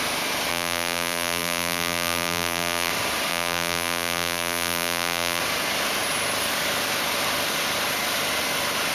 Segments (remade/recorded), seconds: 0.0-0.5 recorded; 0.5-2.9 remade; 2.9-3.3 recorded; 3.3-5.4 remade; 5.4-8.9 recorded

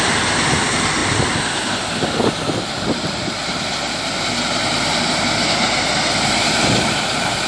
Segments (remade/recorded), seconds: 0.0-7.5 recorded